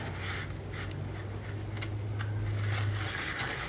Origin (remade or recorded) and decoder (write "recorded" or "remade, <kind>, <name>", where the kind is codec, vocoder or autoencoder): recorded